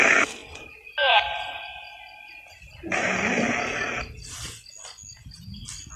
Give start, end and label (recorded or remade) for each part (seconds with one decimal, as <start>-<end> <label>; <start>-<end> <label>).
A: 0.0-5.1 recorded; 5.1-5.6 remade; 5.6-6.0 recorded